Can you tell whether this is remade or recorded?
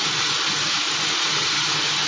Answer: recorded